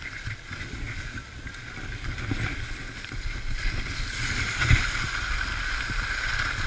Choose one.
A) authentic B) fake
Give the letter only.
A